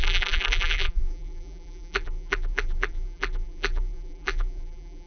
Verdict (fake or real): fake